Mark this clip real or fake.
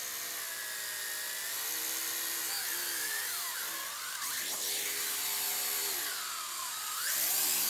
real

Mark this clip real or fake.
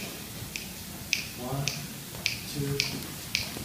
real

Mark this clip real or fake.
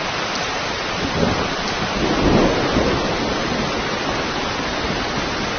real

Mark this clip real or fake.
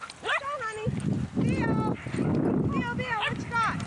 real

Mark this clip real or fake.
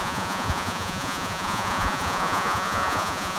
fake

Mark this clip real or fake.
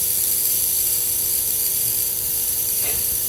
fake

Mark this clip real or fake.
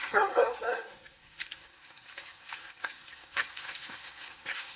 fake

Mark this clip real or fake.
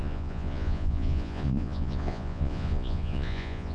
fake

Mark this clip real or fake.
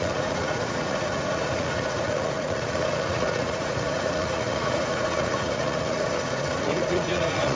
fake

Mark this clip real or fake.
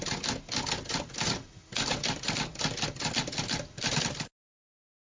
real